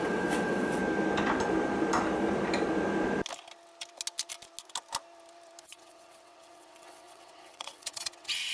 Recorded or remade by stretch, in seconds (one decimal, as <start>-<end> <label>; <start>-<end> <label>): 0.0-0.8 remade; 0.8-5.6 recorded; 5.6-8.5 remade